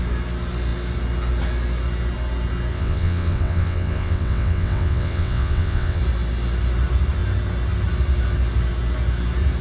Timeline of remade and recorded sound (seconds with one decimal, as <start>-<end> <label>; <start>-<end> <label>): 0.0-2.7 recorded; 2.7-6.0 remade; 6.0-9.6 recorded